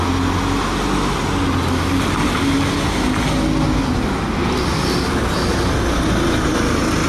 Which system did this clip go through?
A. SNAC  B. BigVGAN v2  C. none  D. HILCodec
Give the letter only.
C